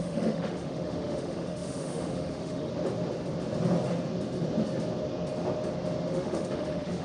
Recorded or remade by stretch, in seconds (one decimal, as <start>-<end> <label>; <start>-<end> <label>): 0.0-2.7 remade; 2.7-6.1 recorded; 6.1-7.0 remade